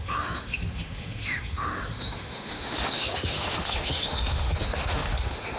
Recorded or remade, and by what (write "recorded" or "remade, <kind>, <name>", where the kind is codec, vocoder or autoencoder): remade, autoencoder, DAC-VAE